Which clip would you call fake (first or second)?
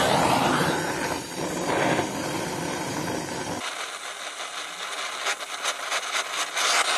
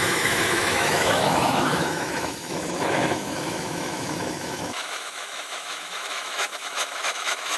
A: second